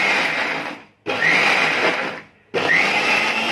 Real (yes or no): yes